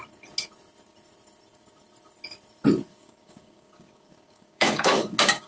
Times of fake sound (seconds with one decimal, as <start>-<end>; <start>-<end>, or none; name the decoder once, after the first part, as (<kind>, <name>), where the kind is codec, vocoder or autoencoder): 2.9-5.5 (codec, DAC)